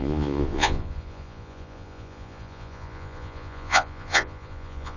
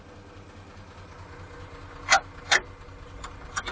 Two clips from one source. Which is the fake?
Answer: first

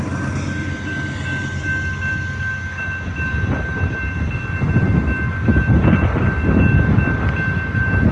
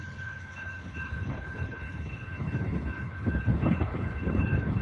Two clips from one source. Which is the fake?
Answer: second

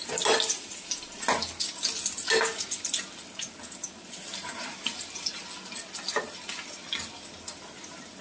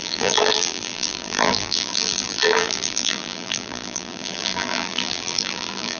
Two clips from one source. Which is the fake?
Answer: second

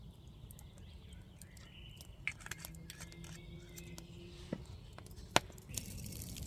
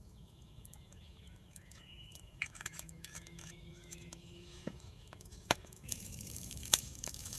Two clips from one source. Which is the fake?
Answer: second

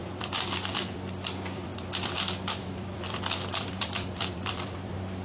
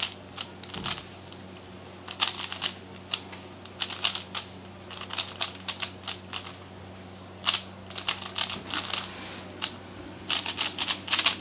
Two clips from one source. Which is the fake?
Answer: first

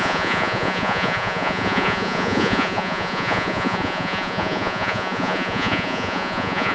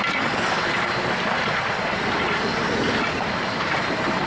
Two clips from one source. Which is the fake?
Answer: first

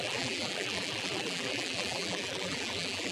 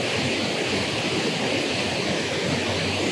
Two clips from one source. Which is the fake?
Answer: first